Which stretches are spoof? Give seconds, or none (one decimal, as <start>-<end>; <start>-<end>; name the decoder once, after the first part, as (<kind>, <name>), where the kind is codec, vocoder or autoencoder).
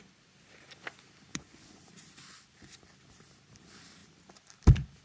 1.3-1.8 (vocoder, Vocos)